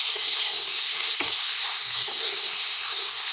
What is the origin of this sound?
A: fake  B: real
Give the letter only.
A